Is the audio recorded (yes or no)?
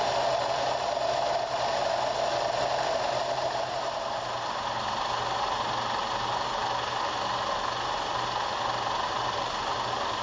yes